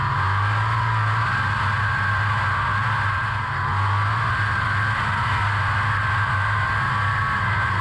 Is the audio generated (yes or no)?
no